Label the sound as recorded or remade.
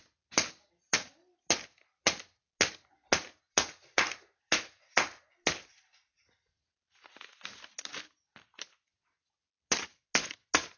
recorded